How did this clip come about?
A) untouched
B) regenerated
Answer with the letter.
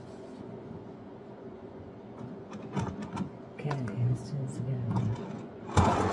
B